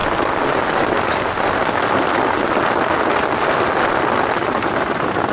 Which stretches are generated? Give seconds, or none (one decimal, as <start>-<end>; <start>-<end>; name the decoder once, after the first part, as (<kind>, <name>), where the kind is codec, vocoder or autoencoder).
none